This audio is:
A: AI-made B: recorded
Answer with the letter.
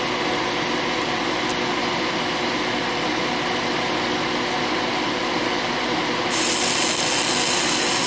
B